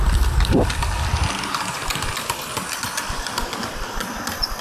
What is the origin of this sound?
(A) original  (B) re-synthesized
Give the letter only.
B